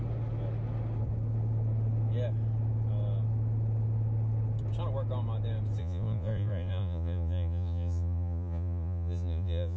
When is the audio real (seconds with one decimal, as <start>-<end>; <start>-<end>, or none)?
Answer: 0.0-5.8